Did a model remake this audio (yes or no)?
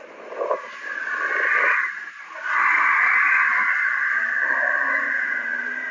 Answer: no